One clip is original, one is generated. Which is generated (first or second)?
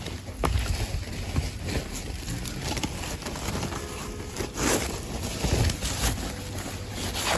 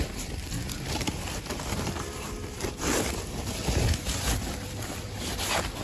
second